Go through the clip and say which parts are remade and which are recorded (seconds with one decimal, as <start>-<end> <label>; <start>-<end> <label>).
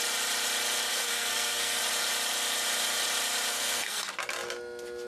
0.0-0.9 recorded; 0.9-1.8 remade; 1.8-3.5 recorded; 3.5-4.1 remade; 4.1-5.1 recorded